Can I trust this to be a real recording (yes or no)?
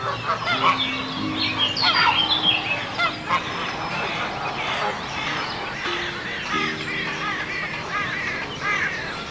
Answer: yes